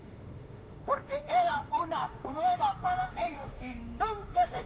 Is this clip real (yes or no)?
no